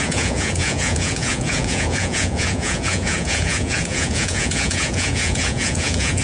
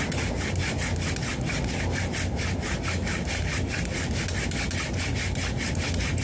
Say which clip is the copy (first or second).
first